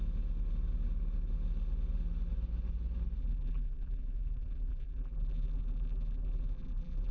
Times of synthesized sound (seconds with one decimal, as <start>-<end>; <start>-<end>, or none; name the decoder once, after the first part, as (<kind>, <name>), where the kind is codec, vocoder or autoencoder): 3.2-7.1 (vocoder, BigVGAN v2)